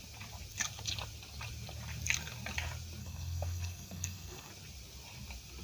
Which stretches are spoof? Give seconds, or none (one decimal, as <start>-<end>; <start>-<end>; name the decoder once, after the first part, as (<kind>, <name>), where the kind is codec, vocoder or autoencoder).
3.0-4.5 (codec, SNAC)